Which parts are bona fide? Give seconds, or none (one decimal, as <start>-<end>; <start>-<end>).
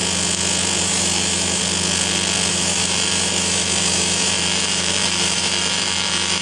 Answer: 0.0-0.8; 1.6-2.5